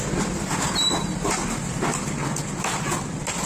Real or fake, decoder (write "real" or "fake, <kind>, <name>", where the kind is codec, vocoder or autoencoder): real